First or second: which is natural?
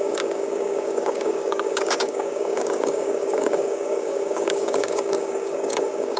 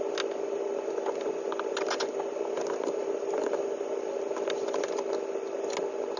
second